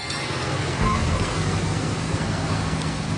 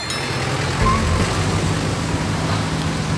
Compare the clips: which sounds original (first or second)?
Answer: second